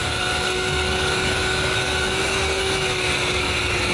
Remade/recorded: remade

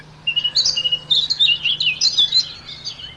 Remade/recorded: recorded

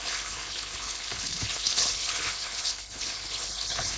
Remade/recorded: remade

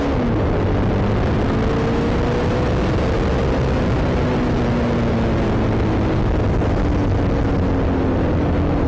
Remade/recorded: recorded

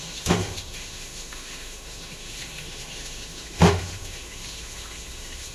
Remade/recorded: remade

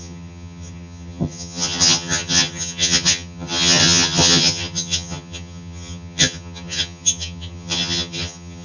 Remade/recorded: remade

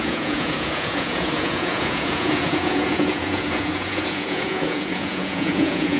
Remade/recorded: remade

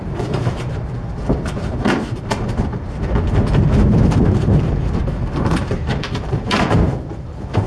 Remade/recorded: remade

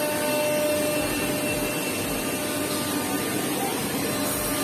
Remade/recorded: recorded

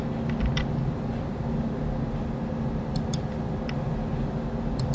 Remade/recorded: recorded